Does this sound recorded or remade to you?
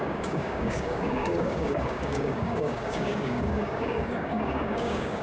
remade